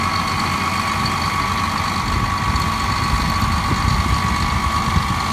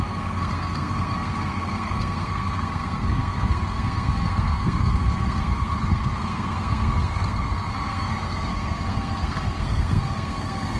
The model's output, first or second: second